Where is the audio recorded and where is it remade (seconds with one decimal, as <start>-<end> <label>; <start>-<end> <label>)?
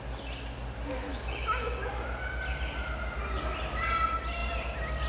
0.0-1.1 recorded; 1.1-1.9 remade; 1.9-5.1 recorded